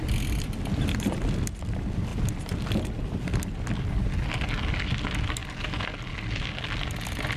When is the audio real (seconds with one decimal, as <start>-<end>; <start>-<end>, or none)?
0.0-7.4